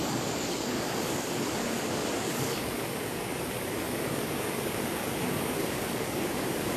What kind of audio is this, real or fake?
fake